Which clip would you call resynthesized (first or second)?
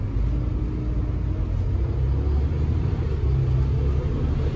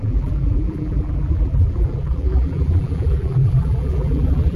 second